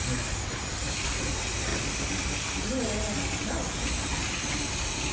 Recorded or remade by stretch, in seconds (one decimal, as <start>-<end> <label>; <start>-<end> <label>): 0.0-5.1 recorded